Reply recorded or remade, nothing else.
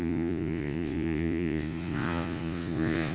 remade